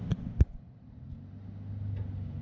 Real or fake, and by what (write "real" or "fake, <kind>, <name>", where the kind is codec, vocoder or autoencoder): real